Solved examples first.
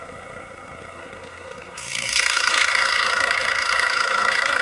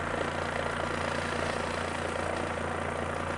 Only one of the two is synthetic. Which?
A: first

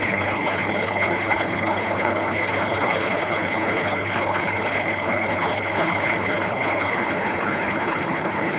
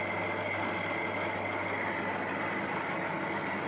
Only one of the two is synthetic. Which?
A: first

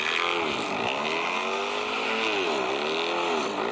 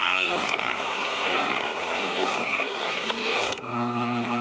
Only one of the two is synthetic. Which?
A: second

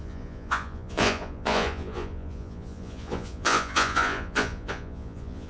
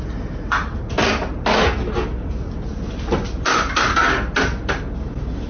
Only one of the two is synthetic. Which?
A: first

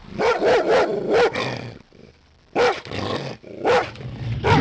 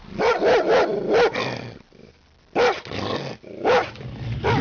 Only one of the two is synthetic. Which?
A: first